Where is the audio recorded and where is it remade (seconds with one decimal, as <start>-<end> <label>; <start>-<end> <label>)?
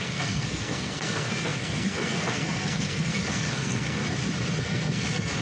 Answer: 0.0-4.0 remade; 4.0-4.6 recorded; 4.6-5.4 remade